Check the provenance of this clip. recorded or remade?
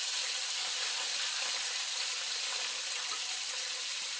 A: remade